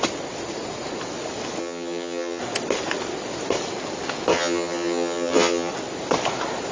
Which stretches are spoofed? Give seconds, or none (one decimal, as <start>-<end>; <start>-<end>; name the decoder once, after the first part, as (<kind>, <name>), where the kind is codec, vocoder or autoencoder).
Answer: 1.6-2.4 (vocoder, HiFi-GAN); 4.3-5.7